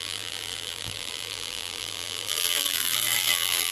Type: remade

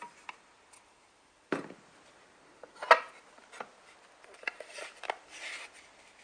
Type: recorded